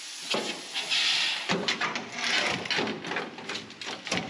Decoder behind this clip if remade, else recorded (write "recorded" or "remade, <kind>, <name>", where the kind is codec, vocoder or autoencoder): recorded